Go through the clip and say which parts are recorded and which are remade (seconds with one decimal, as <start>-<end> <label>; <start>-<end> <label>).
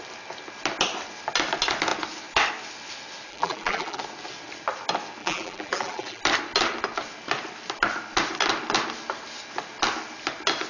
0.0-3.3 recorded; 3.3-4.0 remade; 4.0-5.2 recorded; 5.2-6.2 remade; 6.2-10.7 recorded